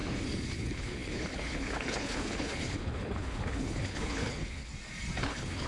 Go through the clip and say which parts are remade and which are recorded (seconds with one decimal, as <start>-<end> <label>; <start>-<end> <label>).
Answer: 0.0-0.5 recorded; 0.5-4.7 remade; 4.7-5.3 recorded; 5.3-5.7 remade